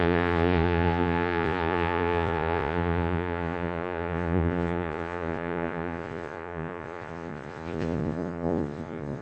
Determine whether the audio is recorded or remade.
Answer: remade